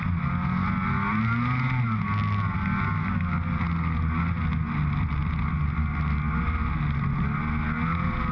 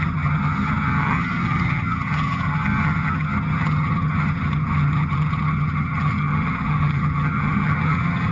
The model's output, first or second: second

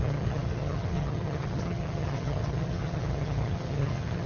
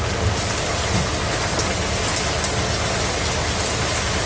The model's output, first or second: first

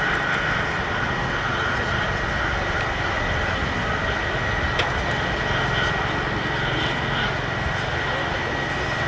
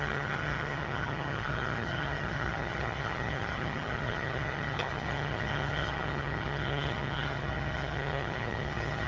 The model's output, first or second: second